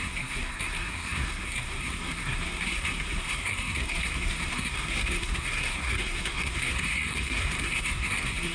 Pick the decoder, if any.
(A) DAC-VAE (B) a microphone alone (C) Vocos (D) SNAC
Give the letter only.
D